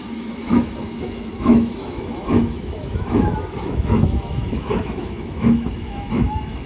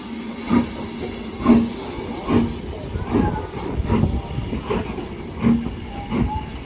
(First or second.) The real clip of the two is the second